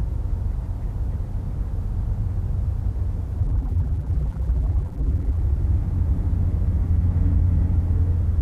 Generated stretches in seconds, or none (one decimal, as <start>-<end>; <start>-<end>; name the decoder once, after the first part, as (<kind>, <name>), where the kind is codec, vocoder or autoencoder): 3.4-5.4 (vocoder, BigVGAN v2)